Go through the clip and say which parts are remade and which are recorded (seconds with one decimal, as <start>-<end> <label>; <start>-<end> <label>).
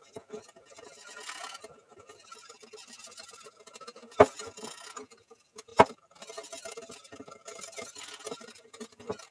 0.0-9.3 recorded